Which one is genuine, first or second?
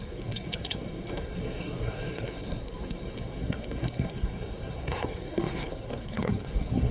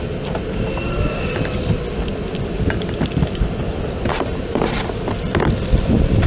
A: second